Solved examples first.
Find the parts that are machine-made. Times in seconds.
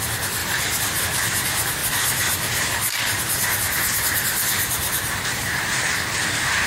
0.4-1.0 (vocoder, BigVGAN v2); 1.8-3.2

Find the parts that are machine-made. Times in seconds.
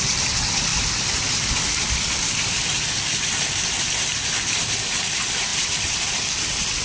0.7-3.3 (vocoder, BigVGAN v2); 4.1-5.1; 5.5-6.8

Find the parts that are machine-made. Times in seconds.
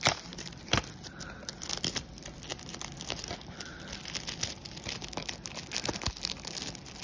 none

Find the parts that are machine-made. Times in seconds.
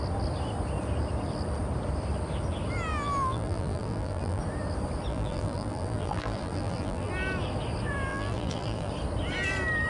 2.9-4.4 (vocoder, BigVGAN v2); 5.1-7.1; 8.1-8.9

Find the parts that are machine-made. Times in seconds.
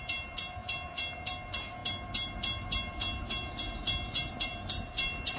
none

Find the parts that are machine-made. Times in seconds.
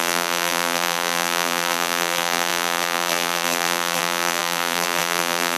0.0-5.6 (vocoder, BigVGAN v2)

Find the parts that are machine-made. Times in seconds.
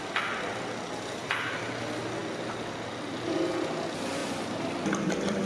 1.2-1.8 (vocoder, BigVGAN v2); 4.2-5.5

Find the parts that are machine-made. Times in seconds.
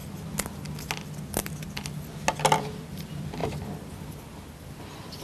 2.6-5.2 (vocoder, BigVGAN v2)